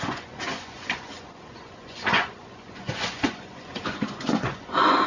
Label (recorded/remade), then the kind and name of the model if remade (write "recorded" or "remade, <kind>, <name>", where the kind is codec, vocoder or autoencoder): remade, vocoder, Vocos